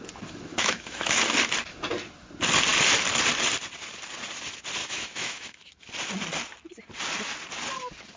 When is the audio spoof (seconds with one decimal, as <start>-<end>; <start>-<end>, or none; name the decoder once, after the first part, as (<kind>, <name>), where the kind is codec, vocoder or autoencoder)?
0.5-1.2 (autoencoder, DAC-VAE); 4.8-5.9

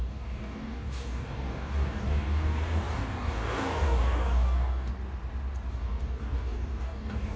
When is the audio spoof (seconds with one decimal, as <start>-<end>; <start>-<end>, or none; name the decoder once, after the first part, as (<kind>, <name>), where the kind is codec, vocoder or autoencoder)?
0.0-4.9 (codec, DAC); 5.7-7.4

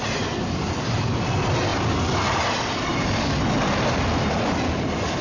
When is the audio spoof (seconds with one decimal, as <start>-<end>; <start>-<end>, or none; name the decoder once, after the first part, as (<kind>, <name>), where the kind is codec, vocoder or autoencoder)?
none

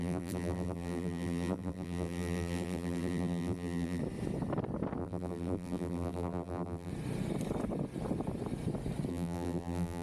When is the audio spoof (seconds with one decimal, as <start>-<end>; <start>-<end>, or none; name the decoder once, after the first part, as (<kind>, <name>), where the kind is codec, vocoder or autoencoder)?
0.0-4.0 (vocoder, BigVGAN v2); 5.0-6.9; 9.1-10.0

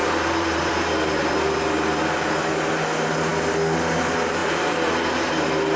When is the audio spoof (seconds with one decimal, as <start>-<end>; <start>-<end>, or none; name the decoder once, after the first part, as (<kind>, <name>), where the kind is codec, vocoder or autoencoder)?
0.0-0.7 (vocoder, BigVGAN v2); 4.4-4.9

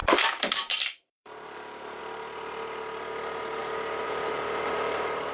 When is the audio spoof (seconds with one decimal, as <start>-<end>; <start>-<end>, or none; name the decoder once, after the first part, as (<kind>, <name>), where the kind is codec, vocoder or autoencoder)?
0.0-2.0 (vocoder, BigVGAN v2)

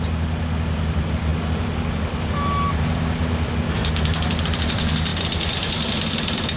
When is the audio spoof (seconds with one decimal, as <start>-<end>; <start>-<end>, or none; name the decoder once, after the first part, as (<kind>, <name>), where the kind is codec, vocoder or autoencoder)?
3.8-4.4 (vocoder, BigVGAN v2); 5.1-6.1